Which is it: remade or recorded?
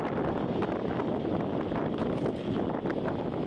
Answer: recorded